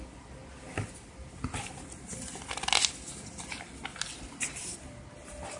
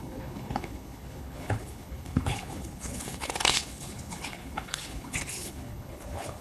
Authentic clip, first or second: first